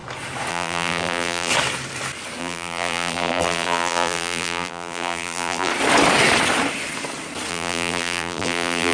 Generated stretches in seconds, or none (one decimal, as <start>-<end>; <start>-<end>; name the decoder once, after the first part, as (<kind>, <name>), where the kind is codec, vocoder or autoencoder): 0.5-1.5 (vocoder, BigVGAN v2); 2.4-5.7; 7.5-8.9